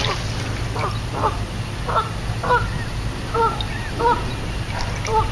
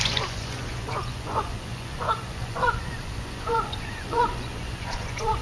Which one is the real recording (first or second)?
first